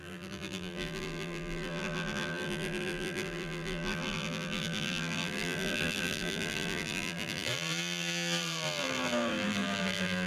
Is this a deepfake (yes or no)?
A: yes